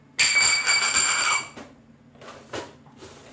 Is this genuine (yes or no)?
yes